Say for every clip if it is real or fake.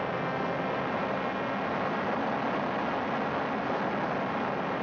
real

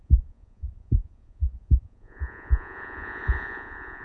fake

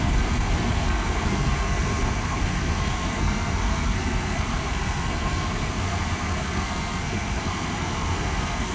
fake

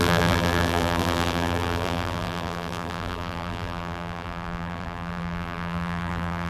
fake